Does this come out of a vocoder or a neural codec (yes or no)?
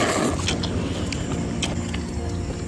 no